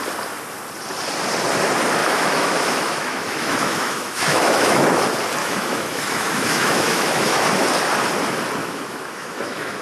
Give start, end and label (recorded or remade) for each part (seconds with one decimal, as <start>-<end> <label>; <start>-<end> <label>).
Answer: 0.0-2.0 recorded; 2.0-5.0 remade; 5.0-5.4 recorded; 5.4-7.4 remade; 7.4-8.6 recorded; 8.6-9.8 remade